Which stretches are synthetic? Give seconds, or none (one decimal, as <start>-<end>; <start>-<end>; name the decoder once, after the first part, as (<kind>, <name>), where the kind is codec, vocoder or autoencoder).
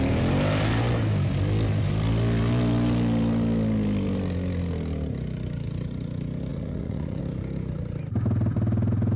6.5-7.2 (vocoder, Vocos)